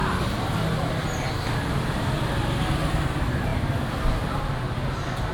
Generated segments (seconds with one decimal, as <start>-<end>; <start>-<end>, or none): none